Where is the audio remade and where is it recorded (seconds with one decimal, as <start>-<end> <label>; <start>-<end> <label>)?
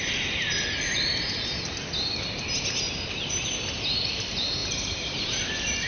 0.0-3.0 recorded; 3.0-3.6 remade; 3.6-4.6 recorded; 4.6-5.2 remade; 5.2-5.9 recorded